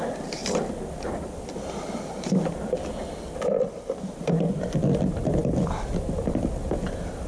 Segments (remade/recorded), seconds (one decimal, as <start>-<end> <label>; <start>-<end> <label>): 0.0-7.3 recorded